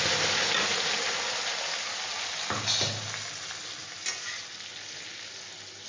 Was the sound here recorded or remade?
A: recorded